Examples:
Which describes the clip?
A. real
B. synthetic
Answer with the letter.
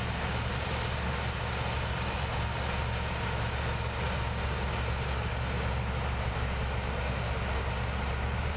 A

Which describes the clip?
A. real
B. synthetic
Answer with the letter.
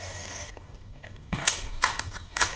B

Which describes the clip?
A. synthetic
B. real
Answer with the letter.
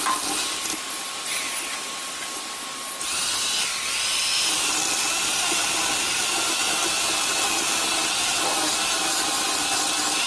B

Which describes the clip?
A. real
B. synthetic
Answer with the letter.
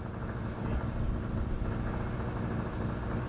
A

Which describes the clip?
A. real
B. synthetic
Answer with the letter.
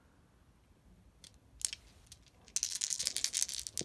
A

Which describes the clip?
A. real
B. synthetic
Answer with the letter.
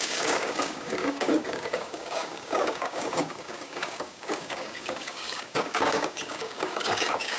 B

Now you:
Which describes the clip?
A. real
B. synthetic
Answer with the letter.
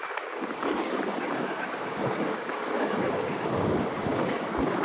B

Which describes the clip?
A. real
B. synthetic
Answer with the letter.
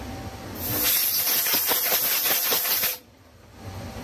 A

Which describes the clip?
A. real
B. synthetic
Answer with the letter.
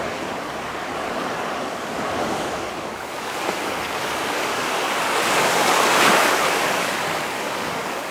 B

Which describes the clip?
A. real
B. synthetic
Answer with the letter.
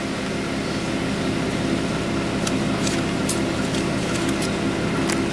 A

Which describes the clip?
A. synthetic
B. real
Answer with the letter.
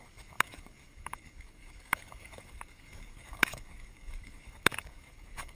A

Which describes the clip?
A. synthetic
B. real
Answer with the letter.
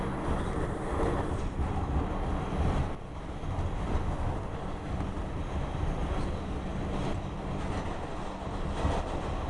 B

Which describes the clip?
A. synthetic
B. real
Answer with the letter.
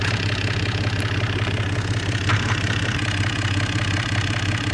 B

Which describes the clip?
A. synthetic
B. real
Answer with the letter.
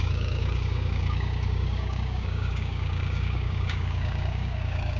A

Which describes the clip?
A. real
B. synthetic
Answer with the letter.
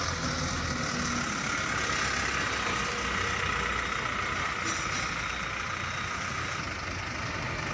A